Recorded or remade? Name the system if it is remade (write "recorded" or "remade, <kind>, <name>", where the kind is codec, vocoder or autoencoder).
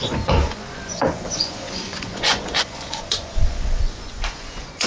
remade, vocoder, Vocos